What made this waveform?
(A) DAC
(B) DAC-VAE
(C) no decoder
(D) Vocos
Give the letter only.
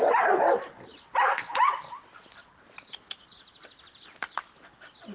C